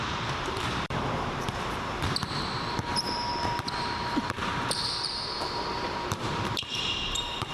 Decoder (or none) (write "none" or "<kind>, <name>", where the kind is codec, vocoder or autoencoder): vocoder, BigVGAN v2